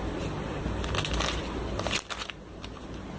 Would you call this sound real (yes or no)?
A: yes